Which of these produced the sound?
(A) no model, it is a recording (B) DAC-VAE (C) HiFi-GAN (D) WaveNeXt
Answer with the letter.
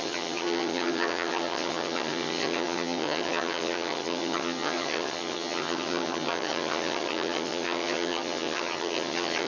C